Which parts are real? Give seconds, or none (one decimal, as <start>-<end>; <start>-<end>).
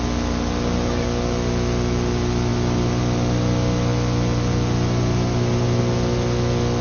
0.0-6.8